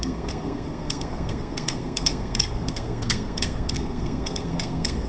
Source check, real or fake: fake